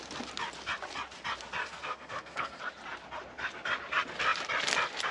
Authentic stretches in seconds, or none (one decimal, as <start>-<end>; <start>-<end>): 0.0-1.6; 2.6-5.1